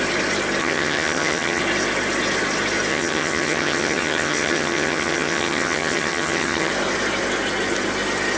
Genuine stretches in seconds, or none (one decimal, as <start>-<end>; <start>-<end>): 0.0-0.6; 1.6-2.9; 6.7-8.4